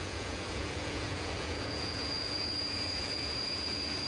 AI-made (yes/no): yes